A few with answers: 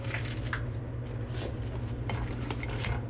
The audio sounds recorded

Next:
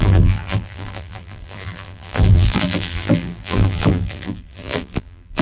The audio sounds remade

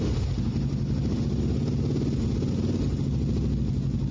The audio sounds recorded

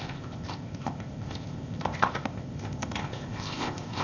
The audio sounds remade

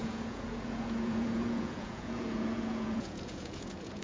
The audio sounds remade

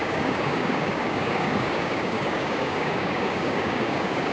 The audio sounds remade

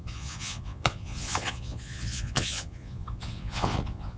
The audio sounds remade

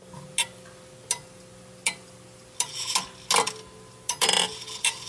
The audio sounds recorded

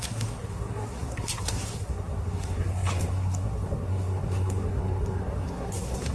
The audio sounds remade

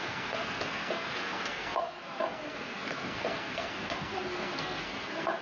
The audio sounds remade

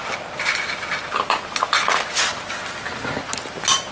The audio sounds recorded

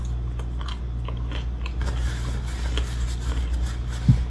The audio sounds recorded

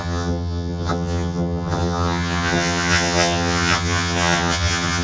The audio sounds remade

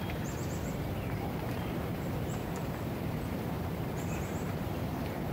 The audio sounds remade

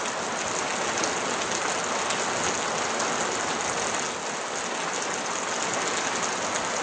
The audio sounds recorded